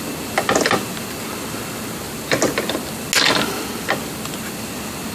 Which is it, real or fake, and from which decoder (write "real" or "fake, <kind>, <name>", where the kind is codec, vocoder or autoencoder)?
real